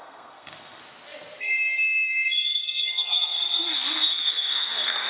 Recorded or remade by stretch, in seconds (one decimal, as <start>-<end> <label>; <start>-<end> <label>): 0.0-0.8 remade; 0.8-1.4 recorded; 1.4-5.1 remade